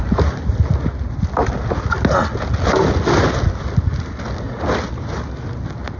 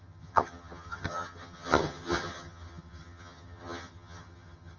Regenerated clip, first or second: second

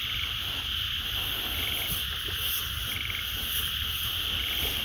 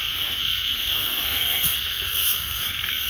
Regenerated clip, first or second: second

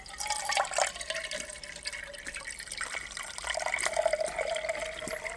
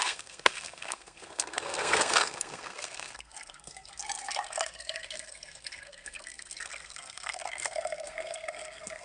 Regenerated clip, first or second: second